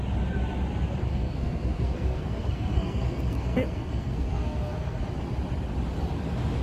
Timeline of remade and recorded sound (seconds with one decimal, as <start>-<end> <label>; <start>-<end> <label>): 0.0-1.0 recorded; 1.0-5.0 remade; 5.0-6.6 recorded